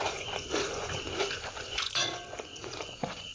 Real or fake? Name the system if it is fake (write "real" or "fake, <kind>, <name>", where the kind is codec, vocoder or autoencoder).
fake, vocoder, Vocos